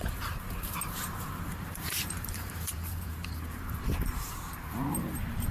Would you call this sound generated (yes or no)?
yes